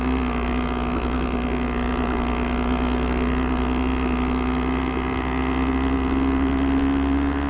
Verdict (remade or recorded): recorded